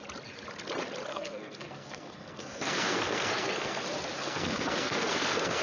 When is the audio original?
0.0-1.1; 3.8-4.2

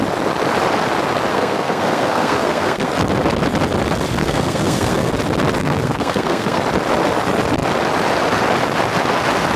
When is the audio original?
0.0-1.3; 2.9-4.2; 5.1-5.6; 6.6-9.6

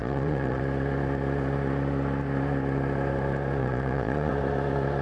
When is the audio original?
0.6-3.6; 4.3-5.0

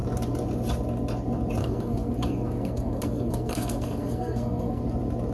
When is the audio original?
0.0-1.6; 4.8-5.3